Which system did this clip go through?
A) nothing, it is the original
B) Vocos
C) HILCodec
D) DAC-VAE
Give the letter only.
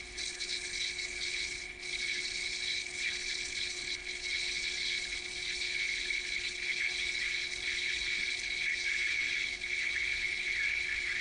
C